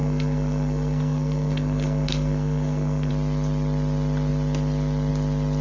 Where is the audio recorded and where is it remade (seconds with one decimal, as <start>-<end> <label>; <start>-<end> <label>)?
0.0-3.1 remade; 3.1-5.6 recorded